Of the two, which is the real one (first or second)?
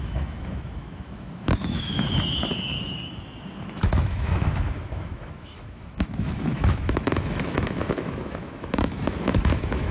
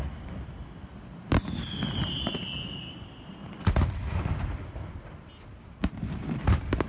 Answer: second